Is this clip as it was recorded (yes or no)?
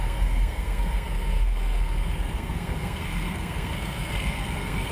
no